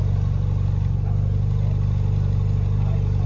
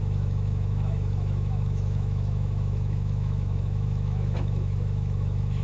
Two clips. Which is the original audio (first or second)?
first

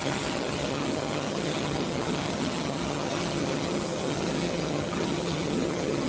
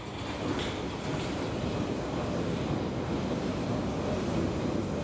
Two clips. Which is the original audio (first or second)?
second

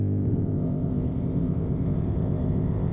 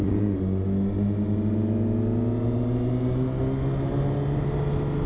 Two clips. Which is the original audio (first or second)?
second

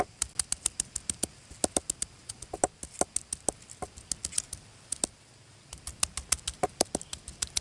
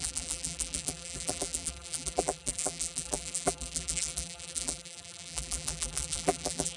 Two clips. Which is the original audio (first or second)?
first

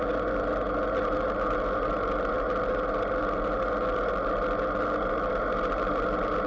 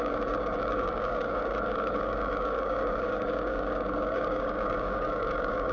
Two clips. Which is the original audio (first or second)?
first